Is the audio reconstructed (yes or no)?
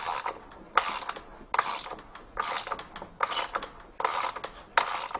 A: no